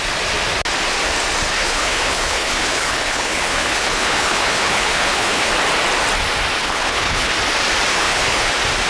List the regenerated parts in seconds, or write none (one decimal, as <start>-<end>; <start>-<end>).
1.5-5.5; 6.6-7.3; 7.9-8.5